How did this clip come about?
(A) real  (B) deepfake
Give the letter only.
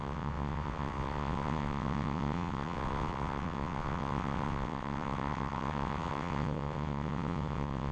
B